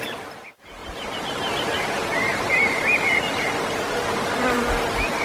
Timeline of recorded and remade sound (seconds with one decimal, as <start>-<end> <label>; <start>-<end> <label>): 0.0-0.8 recorded; 0.8-2.5 remade; 2.5-5.2 recorded